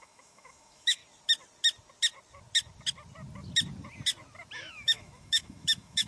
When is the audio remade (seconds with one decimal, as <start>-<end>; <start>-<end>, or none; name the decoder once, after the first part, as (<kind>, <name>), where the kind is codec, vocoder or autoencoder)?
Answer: 0.0-1.0 (autoencoder, DAC-VAE); 4.7-6.1